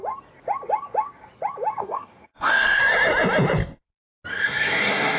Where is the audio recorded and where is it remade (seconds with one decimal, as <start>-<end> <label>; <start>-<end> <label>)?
0.0-1.8 recorded; 1.8-2.8 remade; 2.8-4.3 recorded; 4.3-5.2 remade